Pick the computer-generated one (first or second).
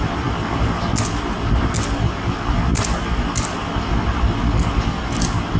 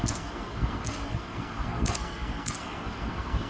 second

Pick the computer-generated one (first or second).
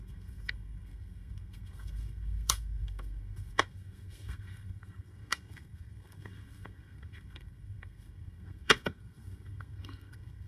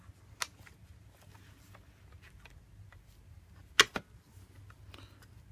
first